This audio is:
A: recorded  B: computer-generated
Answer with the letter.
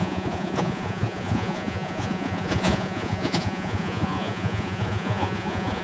B